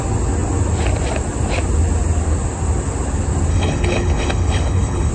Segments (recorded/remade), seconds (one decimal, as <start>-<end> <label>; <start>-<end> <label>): 0.0-3.5 recorded; 3.5-5.1 remade